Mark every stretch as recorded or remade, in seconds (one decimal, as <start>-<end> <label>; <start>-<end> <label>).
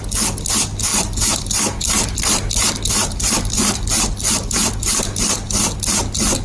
0.0-0.9 recorded; 0.9-4.5 remade; 4.5-6.4 recorded